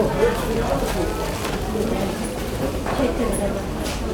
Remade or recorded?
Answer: recorded